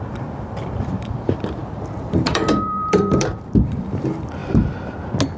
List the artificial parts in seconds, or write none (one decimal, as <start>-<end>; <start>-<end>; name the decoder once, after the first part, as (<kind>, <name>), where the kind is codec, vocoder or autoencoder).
0.0-1.6 (vocoder, BigVGAN v2); 2.2-4.4